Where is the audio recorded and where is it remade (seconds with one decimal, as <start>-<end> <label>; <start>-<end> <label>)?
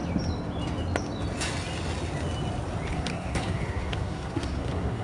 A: 0.0-2.9 recorded; 2.9-5.0 remade